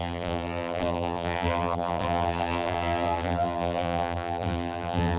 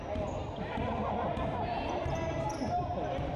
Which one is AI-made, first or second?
first